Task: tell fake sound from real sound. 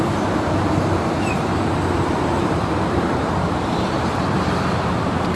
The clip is fake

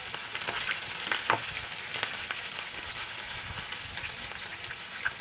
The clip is real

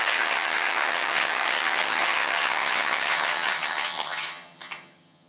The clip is fake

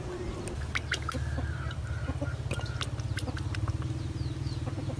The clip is real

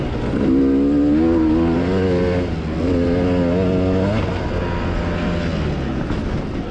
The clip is real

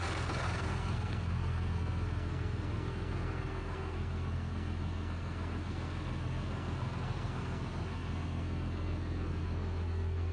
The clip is fake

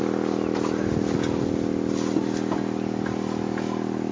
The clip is real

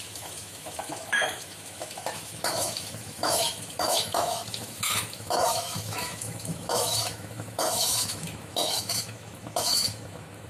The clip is fake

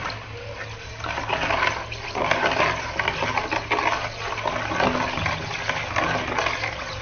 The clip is real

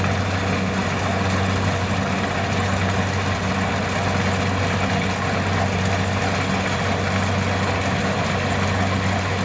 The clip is real